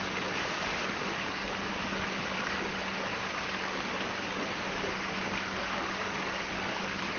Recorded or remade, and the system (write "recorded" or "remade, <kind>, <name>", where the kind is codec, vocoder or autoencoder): remade, codec, DAC